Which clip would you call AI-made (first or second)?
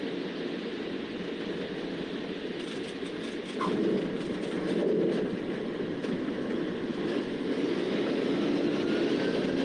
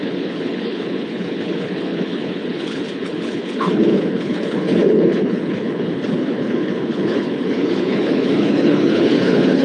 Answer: second